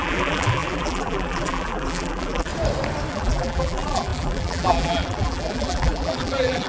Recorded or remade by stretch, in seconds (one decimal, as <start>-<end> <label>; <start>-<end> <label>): 0.0-2.5 remade; 2.5-3.1 recorded; 3.1-6.7 remade